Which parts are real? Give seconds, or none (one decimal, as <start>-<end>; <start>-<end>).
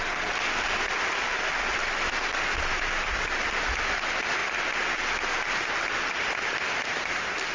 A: 1.8-2.6; 4.4-7.1